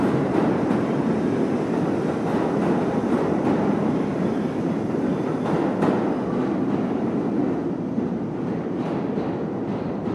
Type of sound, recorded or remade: recorded